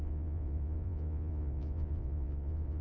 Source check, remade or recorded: remade